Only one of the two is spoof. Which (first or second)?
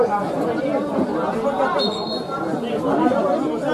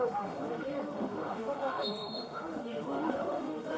second